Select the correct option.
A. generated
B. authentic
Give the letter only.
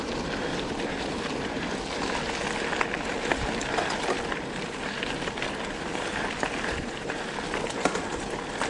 B